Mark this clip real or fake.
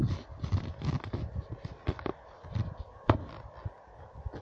real